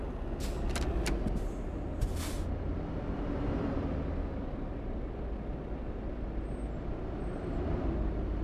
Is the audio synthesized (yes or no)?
no